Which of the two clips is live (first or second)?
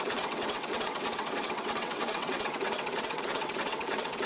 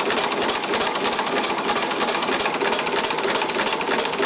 second